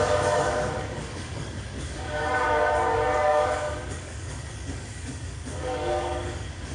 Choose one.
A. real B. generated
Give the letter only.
B